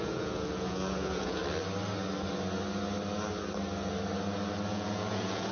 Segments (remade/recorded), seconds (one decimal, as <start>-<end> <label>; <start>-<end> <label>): 0.0-1.4 remade; 1.4-4.7 recorded; 4.7-5.5 remade